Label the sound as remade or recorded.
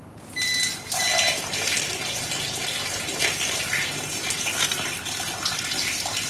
remade